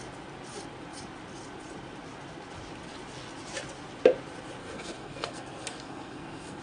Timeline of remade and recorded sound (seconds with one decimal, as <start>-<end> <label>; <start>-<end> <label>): 0.0-4.6 recorded; 4.6-6.6 remade